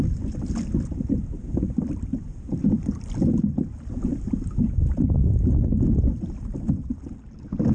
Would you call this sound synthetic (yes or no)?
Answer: no